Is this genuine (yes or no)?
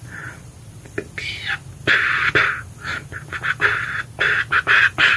yes